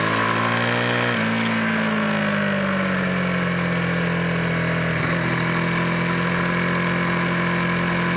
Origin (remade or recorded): recorded